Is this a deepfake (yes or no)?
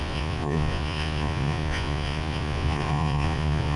yes